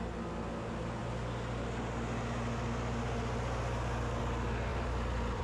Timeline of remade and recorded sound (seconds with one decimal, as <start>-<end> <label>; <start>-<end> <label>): 0.0-4.7 recorded; 4.7-5.4 remade